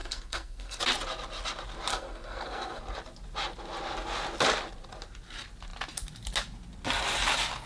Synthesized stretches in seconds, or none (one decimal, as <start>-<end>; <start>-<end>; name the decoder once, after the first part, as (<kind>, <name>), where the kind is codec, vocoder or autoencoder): 0.0-0.8 (codec, SNAC); 1.9-2.8